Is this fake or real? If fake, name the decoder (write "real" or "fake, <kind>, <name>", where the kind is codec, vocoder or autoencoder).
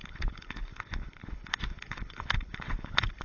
fake, codec, HILCodec